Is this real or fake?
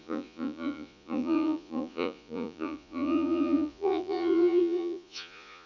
fake